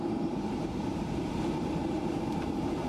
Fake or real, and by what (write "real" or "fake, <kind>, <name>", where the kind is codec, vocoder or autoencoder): fake, vocoder, BigVGAN v2